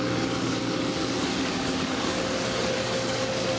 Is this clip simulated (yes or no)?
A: yes